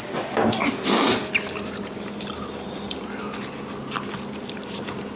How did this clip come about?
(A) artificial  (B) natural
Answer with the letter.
B